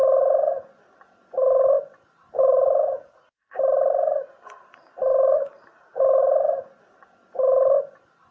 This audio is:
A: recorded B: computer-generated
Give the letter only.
A